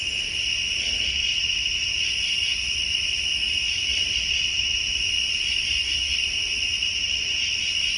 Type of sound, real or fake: real